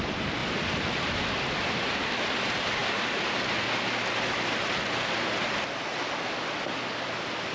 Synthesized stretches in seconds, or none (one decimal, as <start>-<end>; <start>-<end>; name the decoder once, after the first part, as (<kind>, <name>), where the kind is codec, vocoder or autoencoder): 0.4-1.0 (vocoder, BigVGAN v2)